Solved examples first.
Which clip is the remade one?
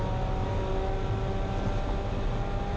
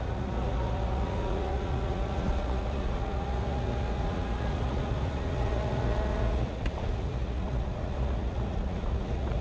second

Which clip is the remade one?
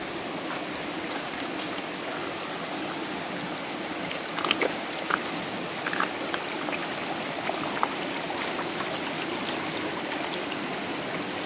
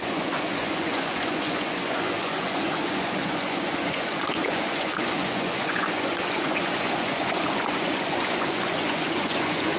second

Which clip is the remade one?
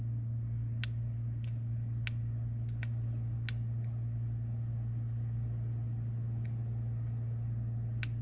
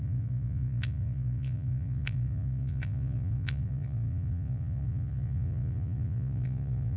second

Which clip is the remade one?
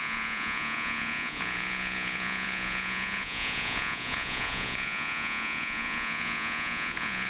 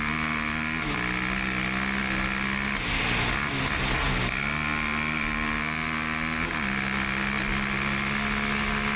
first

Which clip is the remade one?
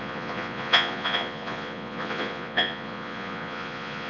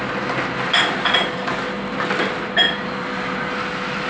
first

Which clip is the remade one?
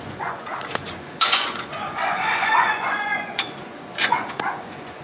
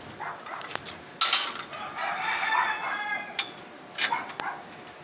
first